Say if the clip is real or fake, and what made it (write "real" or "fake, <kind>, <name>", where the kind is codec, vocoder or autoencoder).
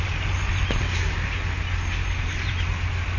real